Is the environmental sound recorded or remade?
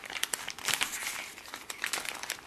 recorded